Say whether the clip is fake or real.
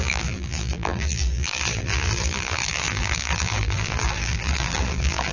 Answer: fake